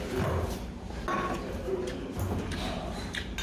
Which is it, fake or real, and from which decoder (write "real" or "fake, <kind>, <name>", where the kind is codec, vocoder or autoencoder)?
real